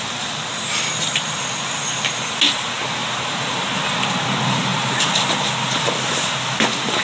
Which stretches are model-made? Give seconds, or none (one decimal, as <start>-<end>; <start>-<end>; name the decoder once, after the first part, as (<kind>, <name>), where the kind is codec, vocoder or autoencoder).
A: 3.0-3.7 (vocoder, BigVGAN v2); 4.7-5.3